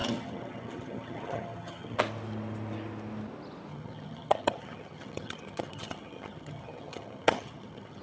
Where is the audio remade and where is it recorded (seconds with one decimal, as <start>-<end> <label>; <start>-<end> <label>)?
0.0-2.0 remade; 2.0-3.7 recorded; 3.7-8.0 remade